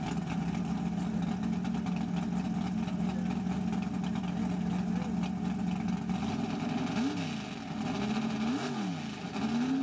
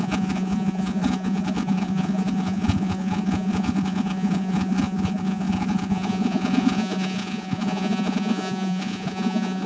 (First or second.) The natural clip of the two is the first